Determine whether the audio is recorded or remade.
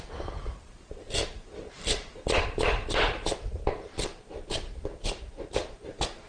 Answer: remade